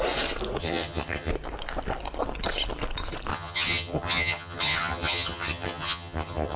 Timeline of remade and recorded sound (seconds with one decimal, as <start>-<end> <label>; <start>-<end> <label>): 0.0-0.6 recorded; 0.6-1.3 remade; 1.3-3.3 recorded; 3.3-6.6 remade